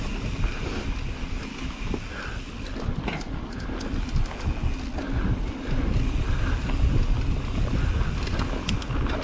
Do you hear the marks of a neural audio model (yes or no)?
no